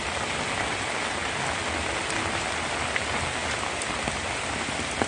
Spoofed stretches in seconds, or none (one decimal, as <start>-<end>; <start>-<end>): none